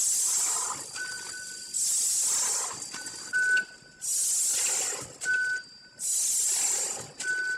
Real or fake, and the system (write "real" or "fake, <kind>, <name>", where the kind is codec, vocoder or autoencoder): real